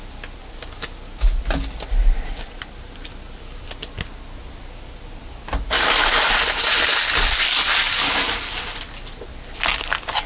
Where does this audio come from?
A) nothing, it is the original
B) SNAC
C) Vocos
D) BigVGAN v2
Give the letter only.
A